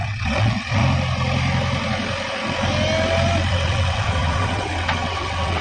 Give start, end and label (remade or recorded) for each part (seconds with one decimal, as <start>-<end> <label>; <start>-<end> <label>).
0.0-0.8 remade; 0.8-3.5 recorded; 3.5-5.6 remade